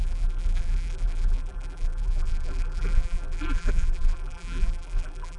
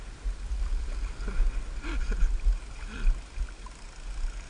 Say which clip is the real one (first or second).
second